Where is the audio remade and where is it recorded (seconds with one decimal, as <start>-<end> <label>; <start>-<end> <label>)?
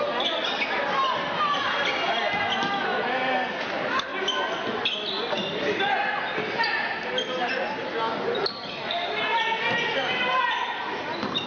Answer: 0.0-11.5 recorded